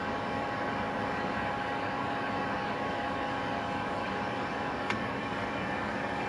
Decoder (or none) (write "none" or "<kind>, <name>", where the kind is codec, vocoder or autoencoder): codec, DAC